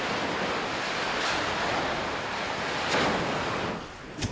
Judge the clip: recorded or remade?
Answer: recorded